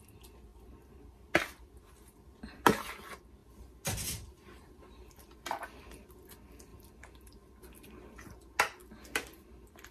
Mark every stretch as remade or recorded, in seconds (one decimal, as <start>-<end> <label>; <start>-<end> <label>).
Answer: 0.0-9.9 recorded